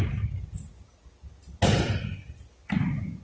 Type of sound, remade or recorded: recorded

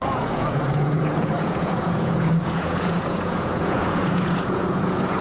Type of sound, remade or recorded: remade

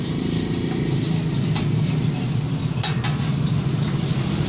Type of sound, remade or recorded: recorded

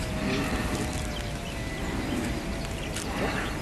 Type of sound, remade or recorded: recorded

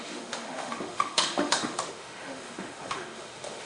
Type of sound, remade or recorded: remade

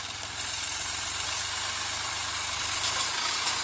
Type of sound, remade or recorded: remade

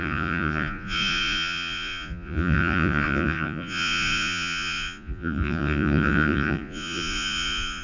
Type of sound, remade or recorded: remade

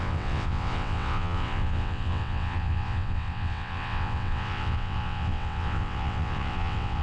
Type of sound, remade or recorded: remade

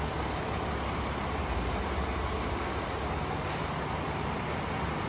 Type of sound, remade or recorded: recorded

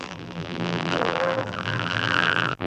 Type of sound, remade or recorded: remade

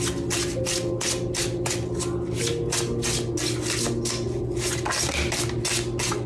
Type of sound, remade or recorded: recorded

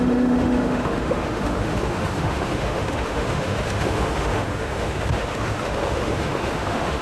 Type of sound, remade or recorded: remade